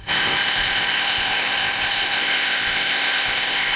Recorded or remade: remade